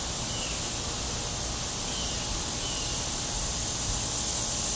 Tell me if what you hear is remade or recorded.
recorded